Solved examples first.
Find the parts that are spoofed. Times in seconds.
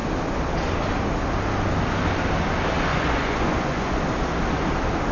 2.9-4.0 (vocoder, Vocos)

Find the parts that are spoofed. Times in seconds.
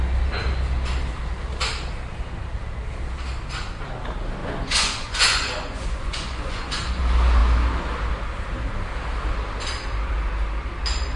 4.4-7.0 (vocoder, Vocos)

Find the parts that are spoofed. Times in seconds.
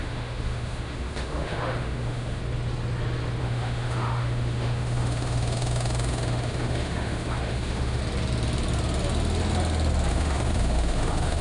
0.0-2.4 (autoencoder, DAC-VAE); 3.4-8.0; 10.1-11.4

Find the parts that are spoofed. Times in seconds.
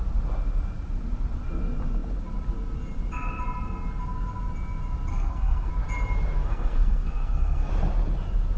5.1-5.7 (codec, SNAC); 6.4-7.7